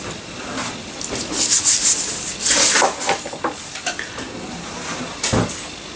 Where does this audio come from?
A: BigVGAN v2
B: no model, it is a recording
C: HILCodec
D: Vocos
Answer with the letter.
B